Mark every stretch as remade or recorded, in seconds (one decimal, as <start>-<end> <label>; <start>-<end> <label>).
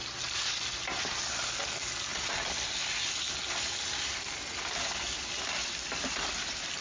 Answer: 0.0-6.8 recorded